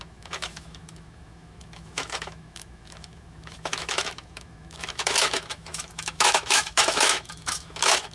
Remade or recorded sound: remade